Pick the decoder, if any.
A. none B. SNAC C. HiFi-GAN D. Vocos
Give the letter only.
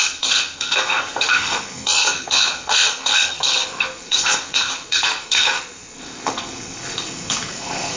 B